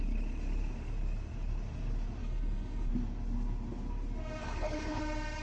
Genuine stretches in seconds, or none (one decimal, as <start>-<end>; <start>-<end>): 0.0-2.2; 2.9-4.4; 5.0-5.4